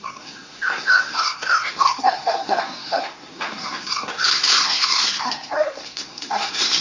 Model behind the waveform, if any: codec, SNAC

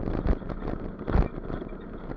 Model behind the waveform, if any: none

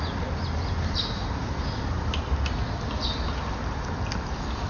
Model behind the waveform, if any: none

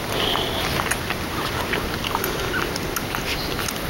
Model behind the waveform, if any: none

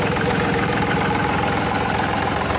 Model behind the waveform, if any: vocoder, BigVGAN v2